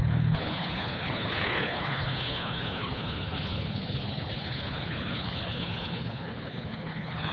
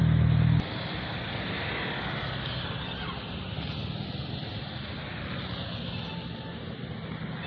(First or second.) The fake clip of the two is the first